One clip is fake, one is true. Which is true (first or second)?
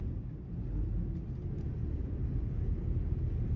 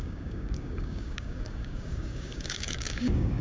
first